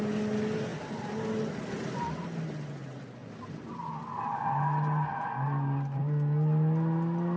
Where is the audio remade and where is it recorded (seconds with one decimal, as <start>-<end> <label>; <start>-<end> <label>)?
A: 0.0-7.4 recorded